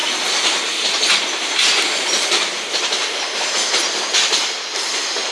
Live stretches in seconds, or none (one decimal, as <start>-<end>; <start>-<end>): 0.0-5.3